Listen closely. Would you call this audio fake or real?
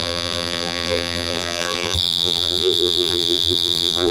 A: fake